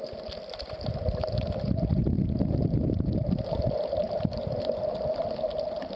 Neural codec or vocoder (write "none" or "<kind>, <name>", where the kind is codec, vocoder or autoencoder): none